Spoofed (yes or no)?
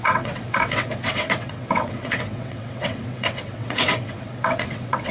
yes